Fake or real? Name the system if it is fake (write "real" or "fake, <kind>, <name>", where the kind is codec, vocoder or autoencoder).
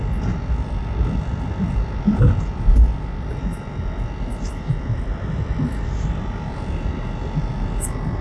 real